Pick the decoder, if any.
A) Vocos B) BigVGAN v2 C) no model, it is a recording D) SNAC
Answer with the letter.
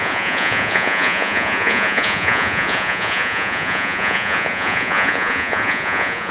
A